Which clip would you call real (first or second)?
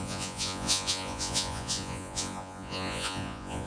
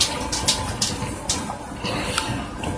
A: second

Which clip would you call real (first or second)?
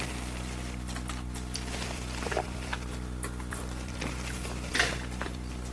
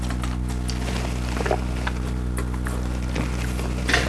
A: second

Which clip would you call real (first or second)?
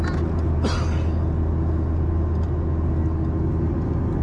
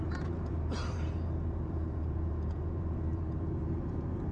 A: first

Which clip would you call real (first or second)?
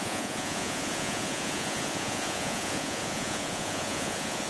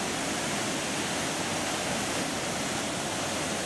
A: second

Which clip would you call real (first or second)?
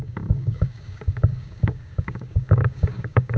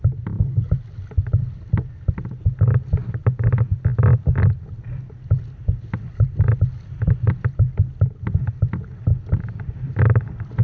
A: second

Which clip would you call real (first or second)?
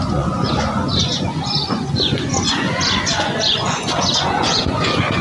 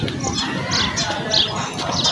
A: second